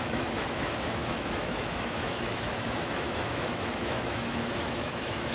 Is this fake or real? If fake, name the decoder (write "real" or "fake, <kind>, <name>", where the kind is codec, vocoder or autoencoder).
fake, autoencoder, DAC-VAE